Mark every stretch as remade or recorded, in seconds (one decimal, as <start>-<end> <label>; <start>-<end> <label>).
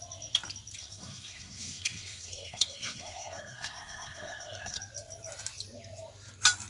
0.0-0.8 recorded; 0.8-4.8 remade; 4.8-6.7 recorded